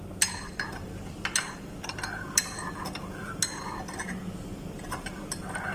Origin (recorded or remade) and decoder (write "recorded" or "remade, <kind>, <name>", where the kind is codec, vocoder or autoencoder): recorded